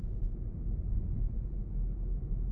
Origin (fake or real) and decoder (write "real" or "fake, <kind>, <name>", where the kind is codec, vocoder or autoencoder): real